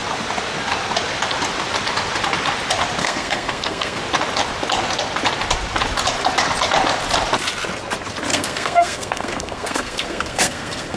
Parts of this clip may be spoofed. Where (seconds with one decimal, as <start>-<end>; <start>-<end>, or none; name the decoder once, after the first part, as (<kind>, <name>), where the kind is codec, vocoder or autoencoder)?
3.0-4.0 (codec, SNAC); 8.3-11.0